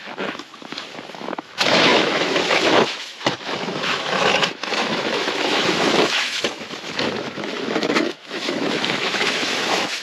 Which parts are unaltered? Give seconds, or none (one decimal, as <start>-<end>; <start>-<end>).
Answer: 0.5-1.1